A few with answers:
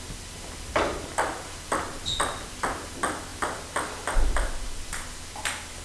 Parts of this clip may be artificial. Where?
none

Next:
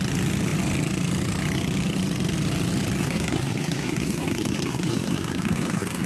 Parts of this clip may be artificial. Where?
3.0-6.1 (codec, SNAC)